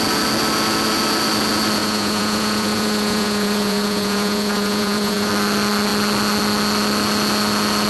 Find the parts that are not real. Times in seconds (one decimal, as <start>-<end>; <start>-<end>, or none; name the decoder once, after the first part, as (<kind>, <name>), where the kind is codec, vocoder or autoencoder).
1.8-5.3 (vocoder, Vocos)